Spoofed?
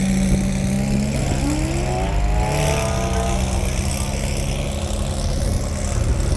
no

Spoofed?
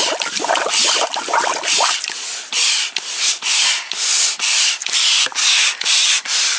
no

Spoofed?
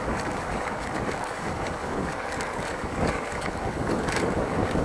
yes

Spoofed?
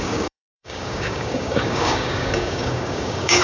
yes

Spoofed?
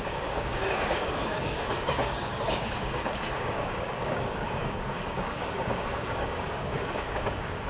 yes